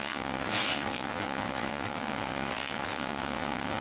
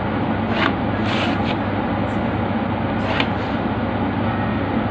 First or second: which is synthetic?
first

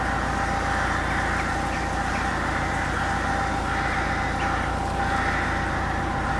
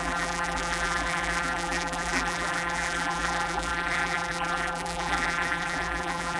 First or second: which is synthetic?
second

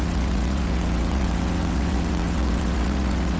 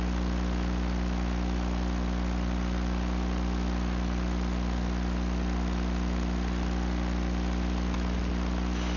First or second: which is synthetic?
first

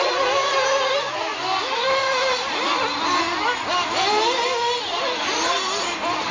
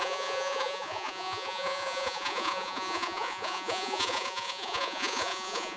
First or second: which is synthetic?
second